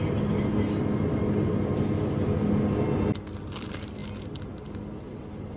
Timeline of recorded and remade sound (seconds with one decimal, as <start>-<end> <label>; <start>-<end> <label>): 0.0-5.6 recorded

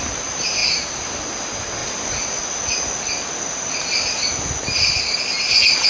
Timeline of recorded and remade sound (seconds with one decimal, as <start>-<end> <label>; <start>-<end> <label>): 0.0-0.6 recorded; 0.6-1.4 remade; 1.4-5.9 recorded

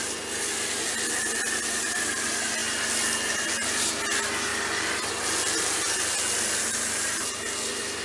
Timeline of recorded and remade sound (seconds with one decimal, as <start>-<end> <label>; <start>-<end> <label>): 0.0-8.0 recorded